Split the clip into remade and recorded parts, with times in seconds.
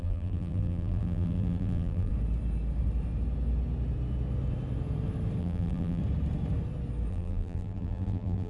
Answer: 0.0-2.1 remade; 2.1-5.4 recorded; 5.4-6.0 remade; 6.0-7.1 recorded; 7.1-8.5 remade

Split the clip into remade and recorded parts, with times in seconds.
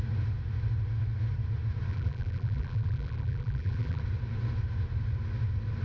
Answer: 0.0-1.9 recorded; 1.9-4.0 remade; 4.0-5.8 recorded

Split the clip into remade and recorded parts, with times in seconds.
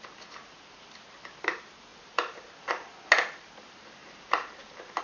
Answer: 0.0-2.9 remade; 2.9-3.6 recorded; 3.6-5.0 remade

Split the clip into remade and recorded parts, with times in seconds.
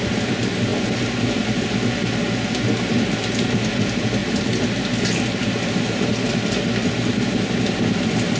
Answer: 0.0-8.4 recorded